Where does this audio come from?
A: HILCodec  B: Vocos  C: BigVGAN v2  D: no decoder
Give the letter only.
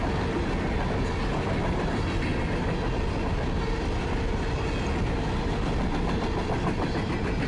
D